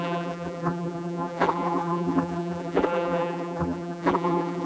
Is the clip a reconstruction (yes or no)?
yes